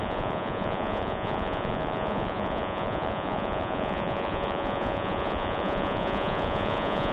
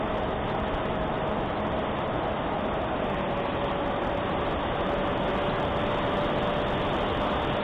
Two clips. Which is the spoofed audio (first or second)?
first